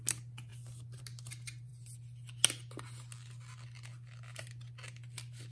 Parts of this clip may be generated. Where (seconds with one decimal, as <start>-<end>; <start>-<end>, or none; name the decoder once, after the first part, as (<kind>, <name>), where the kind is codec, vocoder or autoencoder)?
none